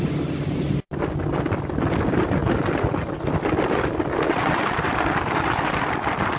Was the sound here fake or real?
real